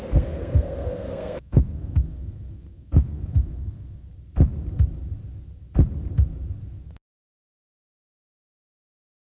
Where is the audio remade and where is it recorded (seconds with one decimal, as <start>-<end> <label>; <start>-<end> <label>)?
0.0-4.1 remade; 4.1-7.4 recorded; 7.4-9.2 remade